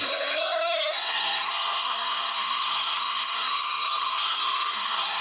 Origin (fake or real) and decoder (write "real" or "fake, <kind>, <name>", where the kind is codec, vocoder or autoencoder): fake, codec, SNAC